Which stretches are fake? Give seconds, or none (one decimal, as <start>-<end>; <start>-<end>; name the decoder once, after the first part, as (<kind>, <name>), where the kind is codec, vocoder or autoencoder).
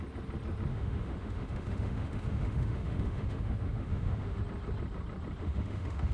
0.7-4.4 (autoencoder, DAC-VAE); 5.4-6.1